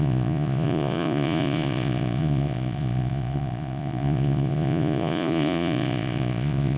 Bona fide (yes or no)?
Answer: no